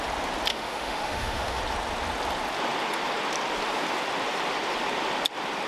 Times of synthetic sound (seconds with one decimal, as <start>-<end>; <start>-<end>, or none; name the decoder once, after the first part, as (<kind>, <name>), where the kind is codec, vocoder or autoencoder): 0.5-1.6 (autoencoder, DAC-VAE)